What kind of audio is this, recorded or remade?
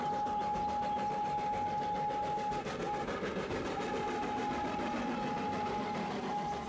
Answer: recorded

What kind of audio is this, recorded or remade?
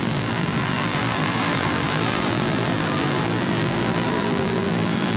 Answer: remade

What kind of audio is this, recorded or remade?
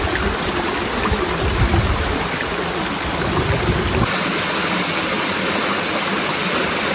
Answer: recorded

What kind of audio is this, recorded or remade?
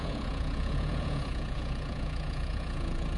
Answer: remade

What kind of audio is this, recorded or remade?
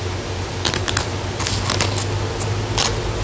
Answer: recorded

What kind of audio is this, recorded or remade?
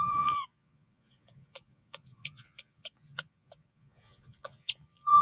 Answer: remade